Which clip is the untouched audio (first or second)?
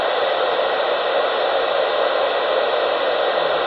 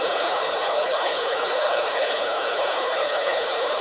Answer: first